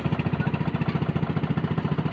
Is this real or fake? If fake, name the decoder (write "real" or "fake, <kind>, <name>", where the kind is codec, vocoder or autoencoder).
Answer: real